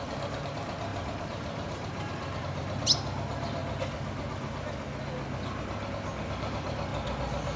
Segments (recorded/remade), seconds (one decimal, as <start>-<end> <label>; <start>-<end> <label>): 0.0-3.6 remade; 3.6-6.3 recorded; 6.3-6.9 remade; 6.9-7.6 recorded